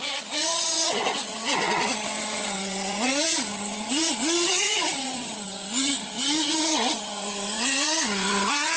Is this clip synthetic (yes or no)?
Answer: yes